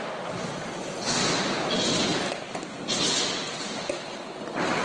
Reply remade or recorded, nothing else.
recorded